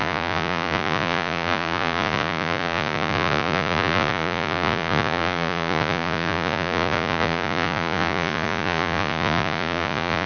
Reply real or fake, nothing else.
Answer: fake